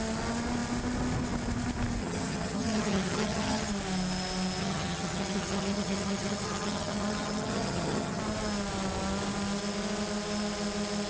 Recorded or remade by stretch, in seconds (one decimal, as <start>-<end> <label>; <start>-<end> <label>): 0.0-2.0 recorded; 2.0-3.7 remade; 3.7-4.6 recorded; 4.6-8.2 remade; 8.2-11.1 recorded